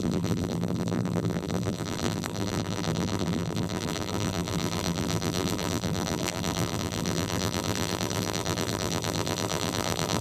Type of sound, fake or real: fake